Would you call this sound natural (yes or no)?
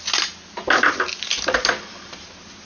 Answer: yes